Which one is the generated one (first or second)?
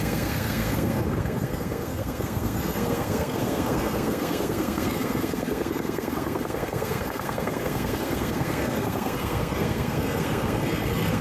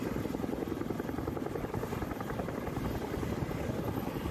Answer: first